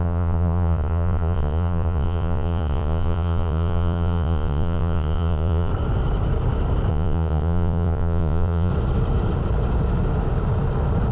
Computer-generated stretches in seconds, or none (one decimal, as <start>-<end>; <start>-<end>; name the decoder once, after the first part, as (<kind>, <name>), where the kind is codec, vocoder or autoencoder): 0.0-5.7 (vocoder, Vocos); 6.9-8.7